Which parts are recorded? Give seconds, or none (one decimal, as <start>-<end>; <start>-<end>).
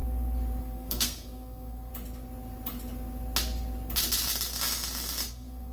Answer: 0.0-0.6; 1.9-5.3